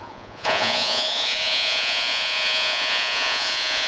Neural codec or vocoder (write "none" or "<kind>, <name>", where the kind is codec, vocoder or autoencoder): vocoder, Vocos